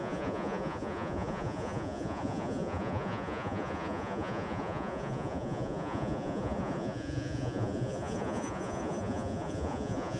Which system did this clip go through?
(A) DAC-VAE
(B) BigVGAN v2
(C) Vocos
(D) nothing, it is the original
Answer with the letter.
C